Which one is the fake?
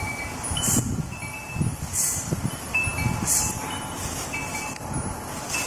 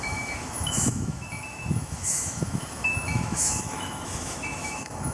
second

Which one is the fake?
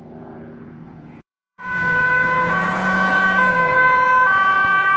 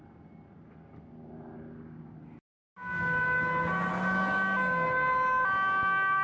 first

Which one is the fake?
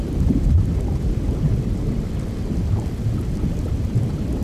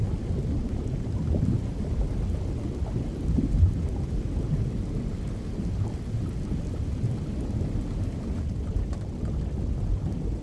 first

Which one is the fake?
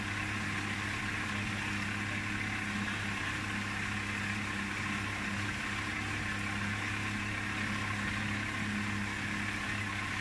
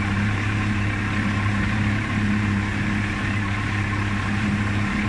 second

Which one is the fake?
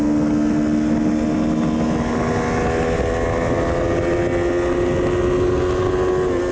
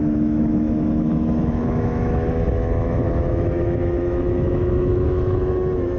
second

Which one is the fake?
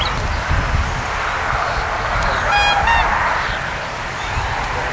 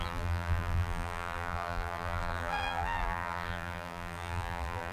second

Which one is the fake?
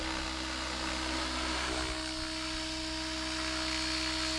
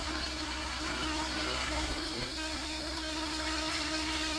second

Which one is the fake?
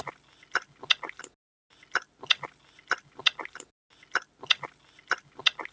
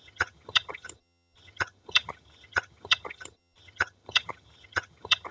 second